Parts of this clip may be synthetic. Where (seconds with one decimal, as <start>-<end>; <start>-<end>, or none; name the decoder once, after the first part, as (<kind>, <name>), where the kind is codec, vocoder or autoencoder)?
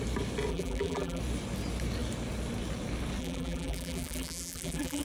0.5-1.2 (vocoder, BigVGAN v2); 3.2-5.0